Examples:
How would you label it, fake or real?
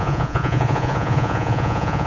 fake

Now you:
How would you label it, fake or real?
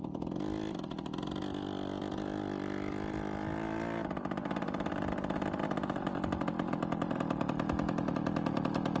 real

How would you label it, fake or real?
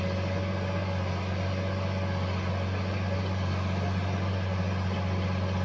real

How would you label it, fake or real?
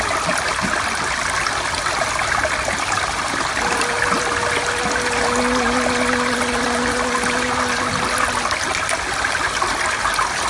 real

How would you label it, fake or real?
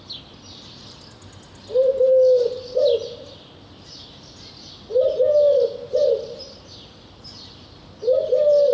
real